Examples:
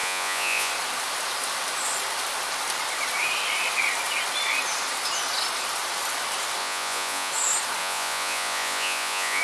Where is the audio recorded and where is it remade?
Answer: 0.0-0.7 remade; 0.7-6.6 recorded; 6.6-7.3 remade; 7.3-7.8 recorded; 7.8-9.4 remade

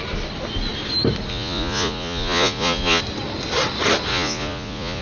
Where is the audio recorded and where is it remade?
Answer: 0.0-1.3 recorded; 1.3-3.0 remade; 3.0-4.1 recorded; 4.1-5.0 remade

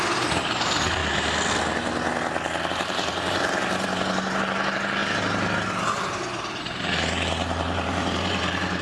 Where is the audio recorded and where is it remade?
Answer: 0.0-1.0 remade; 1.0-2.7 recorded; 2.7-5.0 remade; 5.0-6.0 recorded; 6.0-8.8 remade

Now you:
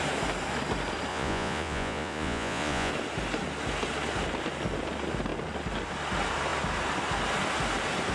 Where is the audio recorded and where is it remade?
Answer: 0.0-1.1 recorded; 1.1-2.9 remade; 2.9-8.1 recorded

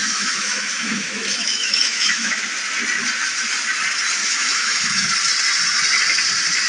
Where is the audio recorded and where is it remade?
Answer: 0.0-2.4 remade; 2.4-4.2 recorded; 4.2-5.1 remade; 5.1-6.7 recorded

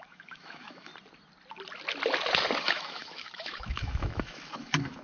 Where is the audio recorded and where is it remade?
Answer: 0.0-0.9 remade; 0.9-2.6 recorded; 2.6-5.0 remade